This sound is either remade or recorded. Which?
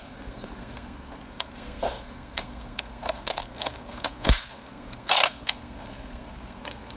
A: remade